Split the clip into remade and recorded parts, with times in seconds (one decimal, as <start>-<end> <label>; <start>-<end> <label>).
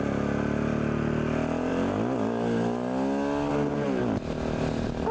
0.0-5.1 recorded